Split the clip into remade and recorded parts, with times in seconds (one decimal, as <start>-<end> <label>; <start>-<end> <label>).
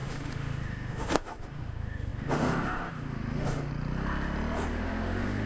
0.0-3.7 remade; 3.7-4.7 recorded; 4.7-5.5 remade